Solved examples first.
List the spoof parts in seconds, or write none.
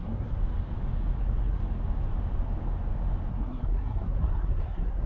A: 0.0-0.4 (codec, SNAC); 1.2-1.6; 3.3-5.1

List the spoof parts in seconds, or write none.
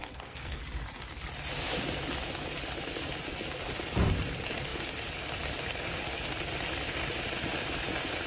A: 0.0-0.6 (codec, SNAC)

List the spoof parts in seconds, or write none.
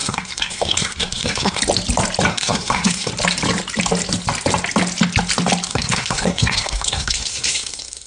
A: 0.0-1.6 (codec, SNAC); 2.3-3.1; 5.7-8.1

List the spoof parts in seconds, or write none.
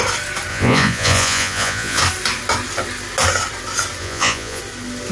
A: 0.5-2.0 (vocoder, Vocos); 4.0-4.6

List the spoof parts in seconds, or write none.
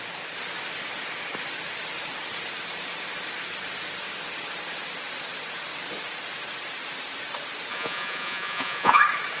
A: 7.7-9.0 (vocoder, Vocos)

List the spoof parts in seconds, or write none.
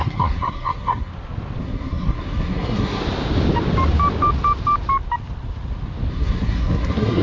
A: 0.0-1.1 (codec, SNAC); 1.6-3.0; 6.1-7.2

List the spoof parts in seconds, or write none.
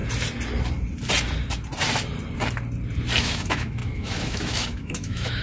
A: 3.2-5.4 (autoencoder, DAC-VAE)